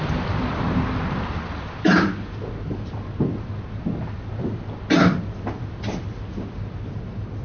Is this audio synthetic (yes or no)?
no